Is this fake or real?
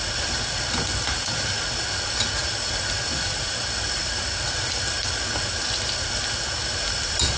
real